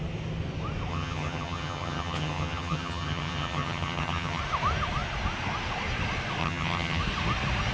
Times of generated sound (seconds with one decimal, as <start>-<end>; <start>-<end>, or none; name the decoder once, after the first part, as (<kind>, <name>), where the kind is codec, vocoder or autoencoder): 0.9-4.4 (vocoder, HiFi-GAN); 6.4-7.0